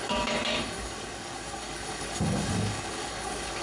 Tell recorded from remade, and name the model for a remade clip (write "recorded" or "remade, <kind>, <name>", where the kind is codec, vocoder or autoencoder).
remade, codec, DAC